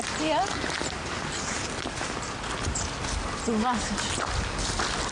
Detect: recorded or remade recorded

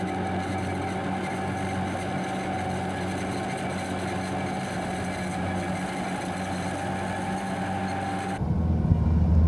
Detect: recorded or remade recorded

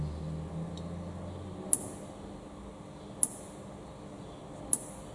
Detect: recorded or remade recorded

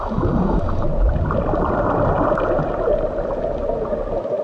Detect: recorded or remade recorded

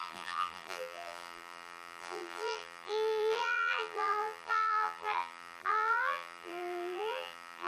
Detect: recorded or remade remade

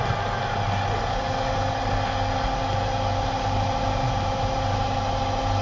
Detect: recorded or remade recorded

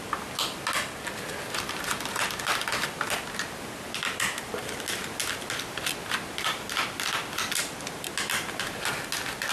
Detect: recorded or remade recorded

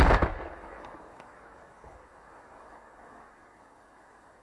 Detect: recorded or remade remade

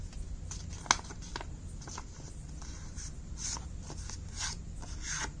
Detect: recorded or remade recorded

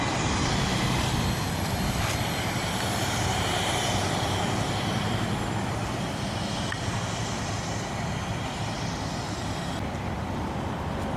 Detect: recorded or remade recorded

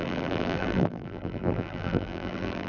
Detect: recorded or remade remade